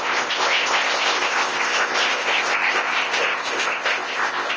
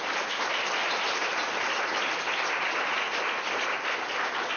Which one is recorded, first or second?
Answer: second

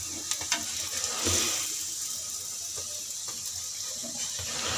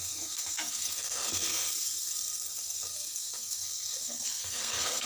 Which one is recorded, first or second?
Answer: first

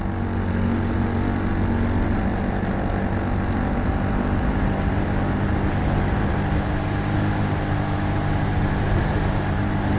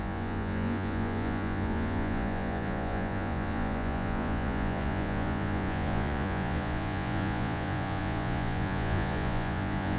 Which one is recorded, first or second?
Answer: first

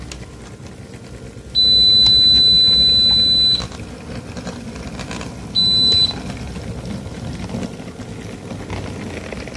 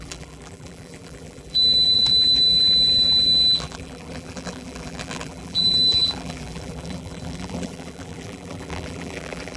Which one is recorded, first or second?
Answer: first